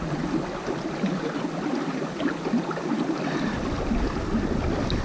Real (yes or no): yes